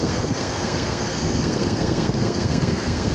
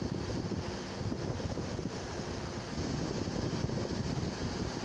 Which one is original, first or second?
second